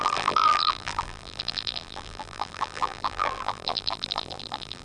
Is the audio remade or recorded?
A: remade